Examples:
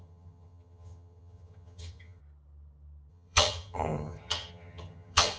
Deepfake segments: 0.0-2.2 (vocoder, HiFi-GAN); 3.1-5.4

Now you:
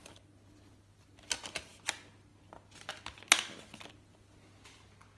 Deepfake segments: none

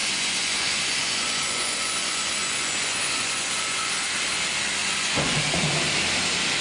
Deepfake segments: 0.0-3.9 (vocoder, Vocos); 4.8-5.4

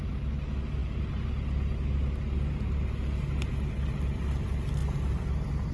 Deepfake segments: none

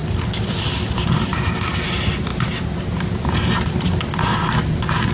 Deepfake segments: none

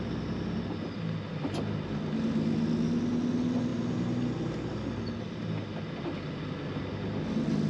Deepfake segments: none